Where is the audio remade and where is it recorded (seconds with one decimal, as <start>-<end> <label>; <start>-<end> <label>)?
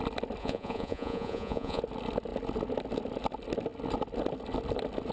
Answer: 0.0-0.4 recorded; 0.4-1.8 remade; 1.8-5.1 recorded